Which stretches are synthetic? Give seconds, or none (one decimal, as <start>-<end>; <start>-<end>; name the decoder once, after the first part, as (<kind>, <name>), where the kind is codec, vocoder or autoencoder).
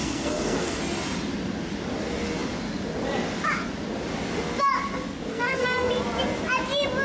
0.0-0.8 (codec, SNAC); 5.3-5.9